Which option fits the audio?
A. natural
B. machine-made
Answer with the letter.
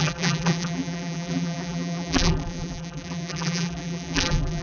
B